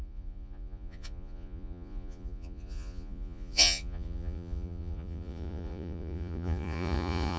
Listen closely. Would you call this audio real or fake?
fake